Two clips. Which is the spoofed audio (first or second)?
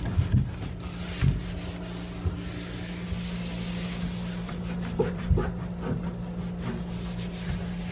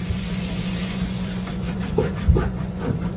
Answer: second